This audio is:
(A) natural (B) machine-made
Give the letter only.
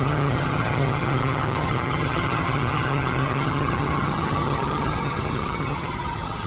B